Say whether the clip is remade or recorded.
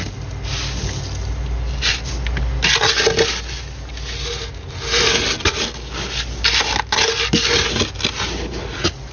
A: recorded